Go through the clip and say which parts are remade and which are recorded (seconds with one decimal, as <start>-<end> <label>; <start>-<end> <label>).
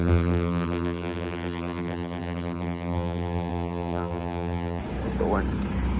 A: 0.0-4.8 remade; 4.8-6.0 recorded